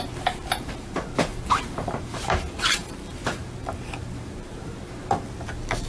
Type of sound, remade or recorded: remade